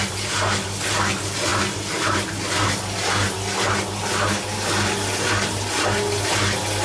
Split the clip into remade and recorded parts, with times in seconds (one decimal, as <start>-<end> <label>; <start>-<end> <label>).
0.0-6.8 recorded